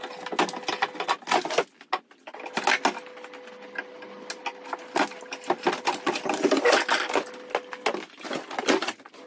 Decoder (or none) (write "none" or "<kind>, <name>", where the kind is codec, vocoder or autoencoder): none